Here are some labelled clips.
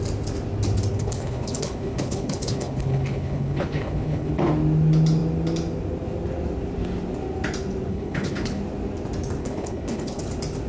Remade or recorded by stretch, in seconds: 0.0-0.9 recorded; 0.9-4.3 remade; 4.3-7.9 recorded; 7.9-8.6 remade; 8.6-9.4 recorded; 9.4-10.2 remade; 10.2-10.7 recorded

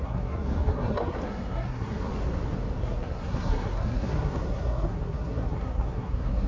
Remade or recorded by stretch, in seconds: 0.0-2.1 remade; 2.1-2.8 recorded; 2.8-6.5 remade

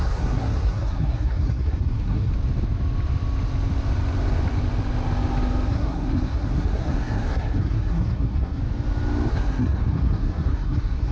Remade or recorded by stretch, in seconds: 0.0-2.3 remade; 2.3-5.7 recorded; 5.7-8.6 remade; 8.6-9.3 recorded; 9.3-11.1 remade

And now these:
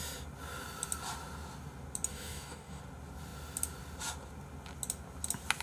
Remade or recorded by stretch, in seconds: 0.0-2.1 recorded; 2.1-2.8 remade; 2.8-5.6 recorded

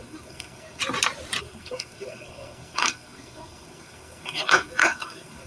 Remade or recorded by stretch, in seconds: 0.0-0.8 remade; 0.8-1.4 recorded; 1.4-5.5 remade